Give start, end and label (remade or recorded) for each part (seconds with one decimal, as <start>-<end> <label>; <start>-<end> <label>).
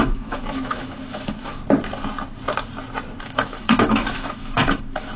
0.0-1.6 remade; 1.6-3.2 recorded; 3.2-5.2 remade